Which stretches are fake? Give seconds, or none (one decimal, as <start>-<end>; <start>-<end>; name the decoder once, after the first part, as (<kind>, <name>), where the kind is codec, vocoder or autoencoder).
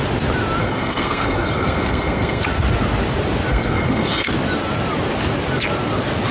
0.6-2.4 (codec, SNAC); 3.5-4.3